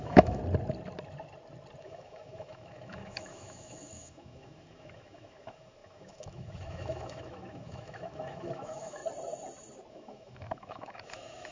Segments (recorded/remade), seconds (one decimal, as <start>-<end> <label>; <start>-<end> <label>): 0.0-0.4 remade; 0.4-1.8 recorded; 1.8-9.0 remade; 9.0-9.9 recorded; 9.9-11.5 remade